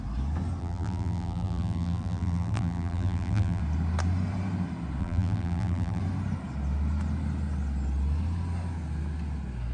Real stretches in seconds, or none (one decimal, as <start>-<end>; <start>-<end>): 0.0-0.6; 3.6-5.0; 6.0-9.7